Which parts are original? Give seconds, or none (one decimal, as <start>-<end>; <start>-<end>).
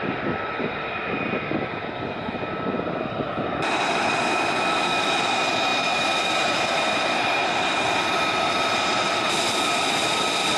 0.0-10.6